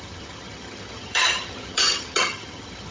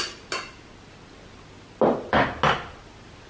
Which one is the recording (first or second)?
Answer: second